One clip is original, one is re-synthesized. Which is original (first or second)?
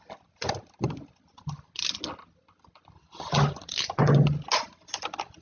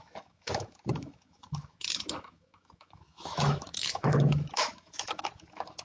first